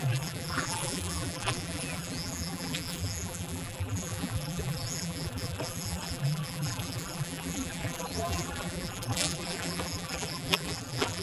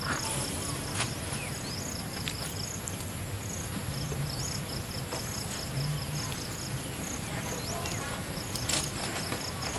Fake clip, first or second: first